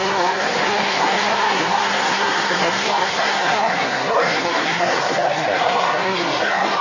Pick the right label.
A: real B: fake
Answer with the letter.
B